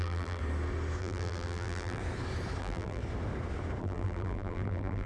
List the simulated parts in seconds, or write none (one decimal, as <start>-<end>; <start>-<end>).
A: 0.0-0.4; 1.0-2.0; 2.6-3.0; 3.8-5.1